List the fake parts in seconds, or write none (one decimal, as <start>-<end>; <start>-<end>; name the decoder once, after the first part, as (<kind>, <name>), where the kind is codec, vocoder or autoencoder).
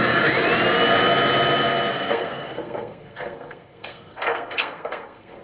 1.9-5.4 (codec, SNAC)